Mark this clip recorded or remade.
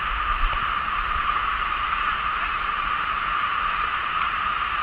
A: remade